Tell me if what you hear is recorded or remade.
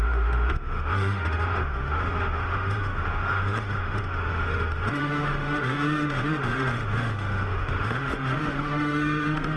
remade